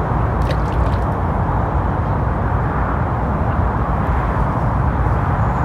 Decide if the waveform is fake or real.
real